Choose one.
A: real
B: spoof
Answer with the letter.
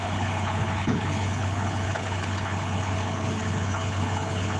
B